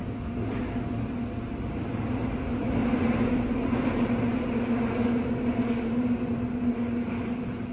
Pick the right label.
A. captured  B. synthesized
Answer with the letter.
A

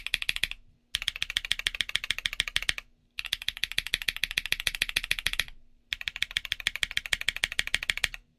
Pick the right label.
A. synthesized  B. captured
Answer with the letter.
B